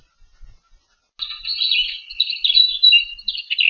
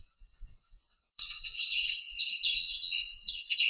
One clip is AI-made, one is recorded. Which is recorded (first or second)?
first